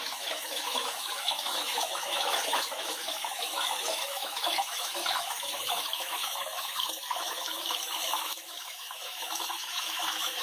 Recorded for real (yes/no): no